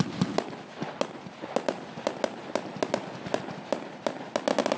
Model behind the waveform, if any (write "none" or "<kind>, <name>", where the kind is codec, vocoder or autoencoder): none